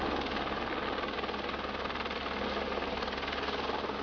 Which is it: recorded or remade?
recorded